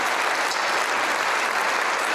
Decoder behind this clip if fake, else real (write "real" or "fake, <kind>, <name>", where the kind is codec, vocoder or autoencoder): real